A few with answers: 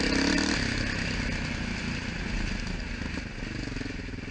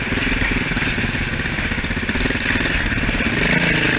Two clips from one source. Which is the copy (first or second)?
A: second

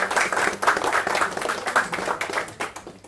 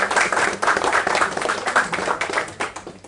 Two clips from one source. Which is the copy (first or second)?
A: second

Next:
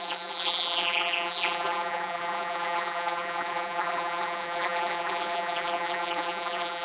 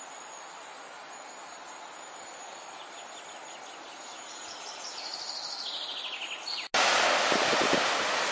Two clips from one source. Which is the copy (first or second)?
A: first